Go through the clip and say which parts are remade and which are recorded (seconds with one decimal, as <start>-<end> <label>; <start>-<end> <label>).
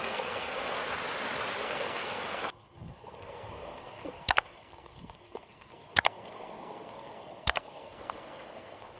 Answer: 0.0-0.8 remade; 0.8-1.6 recorded; 1.6-9.0 remade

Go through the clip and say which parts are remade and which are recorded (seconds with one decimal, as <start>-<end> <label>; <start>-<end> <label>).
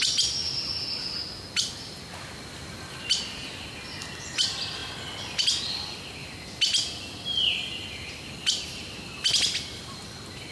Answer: 0.0-10.5 recorded